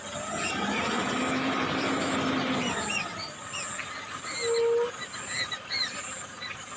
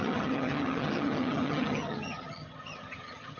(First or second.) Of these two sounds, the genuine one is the first